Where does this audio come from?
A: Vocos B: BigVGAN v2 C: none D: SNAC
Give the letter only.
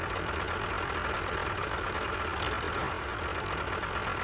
C